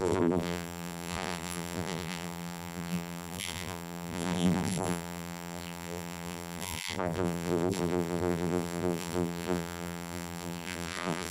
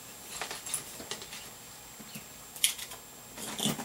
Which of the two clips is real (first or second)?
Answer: second